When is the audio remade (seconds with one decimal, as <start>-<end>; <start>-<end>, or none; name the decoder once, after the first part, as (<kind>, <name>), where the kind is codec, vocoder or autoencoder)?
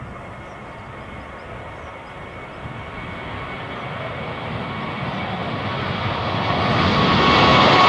none